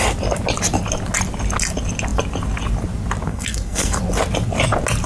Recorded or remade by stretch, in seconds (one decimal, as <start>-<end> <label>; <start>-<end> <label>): 0.0-3.3 recorded; 3.3-4.0 remade; 4.0-5.1 recorded